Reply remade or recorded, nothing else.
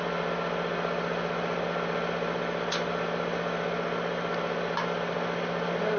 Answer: recorded